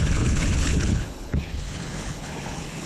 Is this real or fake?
fake